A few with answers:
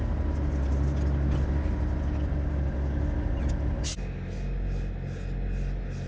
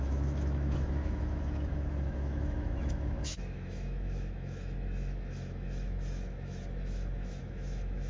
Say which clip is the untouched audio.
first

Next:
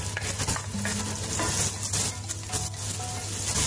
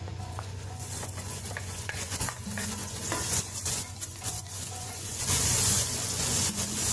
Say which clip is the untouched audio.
first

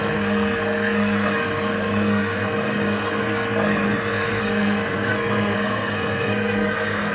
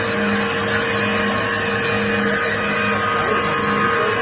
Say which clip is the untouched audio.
second